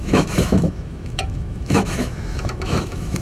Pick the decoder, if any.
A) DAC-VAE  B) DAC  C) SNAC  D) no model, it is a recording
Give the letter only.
A